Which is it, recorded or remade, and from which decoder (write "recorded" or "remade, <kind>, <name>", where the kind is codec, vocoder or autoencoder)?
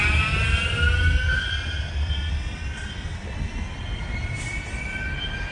recorded